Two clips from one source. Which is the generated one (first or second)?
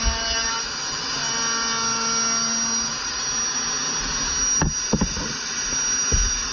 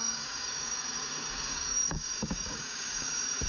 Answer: second